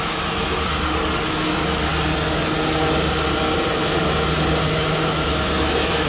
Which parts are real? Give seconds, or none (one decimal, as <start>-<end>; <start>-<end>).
0.4-1.2; 1.9-5.0